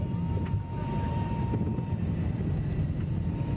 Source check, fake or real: real